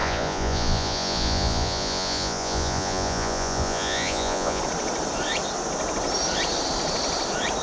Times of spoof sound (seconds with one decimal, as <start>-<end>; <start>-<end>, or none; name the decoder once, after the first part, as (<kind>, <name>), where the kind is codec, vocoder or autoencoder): 0.0-4.6 (vocoder, Vocos)